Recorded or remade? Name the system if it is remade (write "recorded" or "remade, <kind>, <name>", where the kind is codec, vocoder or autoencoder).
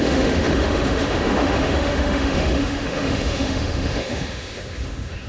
remade, autoencoder, DAC-VAE